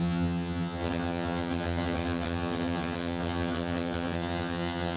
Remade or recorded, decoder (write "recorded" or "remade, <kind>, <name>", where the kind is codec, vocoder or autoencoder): remade, vocoder, HiFi-GAN